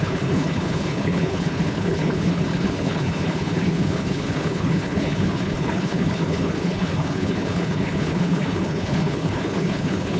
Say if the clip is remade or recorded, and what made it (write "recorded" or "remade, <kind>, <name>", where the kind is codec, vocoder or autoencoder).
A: remade, codec, HILCodec